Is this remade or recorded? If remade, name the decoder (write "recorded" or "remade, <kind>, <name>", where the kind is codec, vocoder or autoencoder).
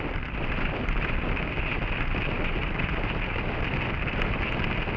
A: recorded